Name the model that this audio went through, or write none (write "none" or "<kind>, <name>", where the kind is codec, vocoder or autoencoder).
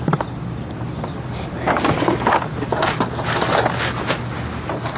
none